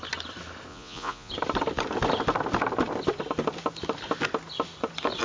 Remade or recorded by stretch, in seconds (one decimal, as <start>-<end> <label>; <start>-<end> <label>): 0.0-0.7 recorded; 0.7-1.3 remade; 1.3-5.2 recorded